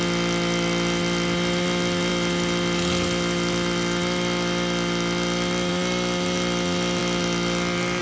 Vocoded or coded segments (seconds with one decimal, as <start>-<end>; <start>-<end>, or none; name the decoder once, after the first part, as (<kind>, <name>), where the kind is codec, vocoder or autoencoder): none